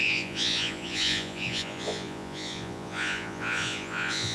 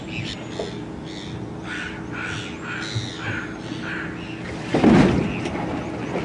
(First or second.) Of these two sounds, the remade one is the first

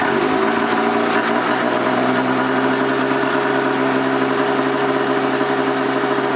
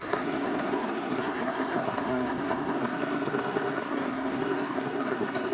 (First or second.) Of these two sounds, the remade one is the second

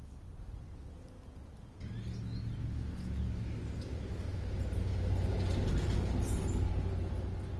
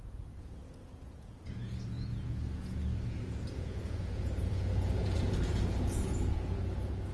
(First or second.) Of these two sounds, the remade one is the second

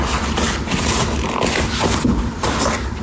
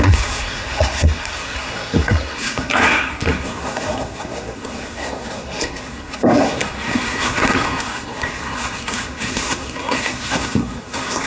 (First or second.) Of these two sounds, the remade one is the second